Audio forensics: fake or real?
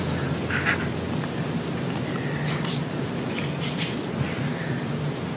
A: real